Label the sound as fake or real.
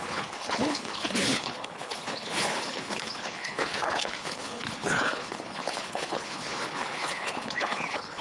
fake